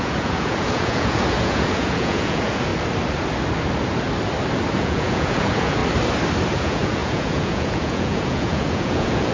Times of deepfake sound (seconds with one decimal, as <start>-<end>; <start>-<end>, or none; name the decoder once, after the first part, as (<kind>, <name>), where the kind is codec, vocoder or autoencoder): 0.0-2.7 (vocoder, Vocos); 4.7-5.8; 6.5-9.3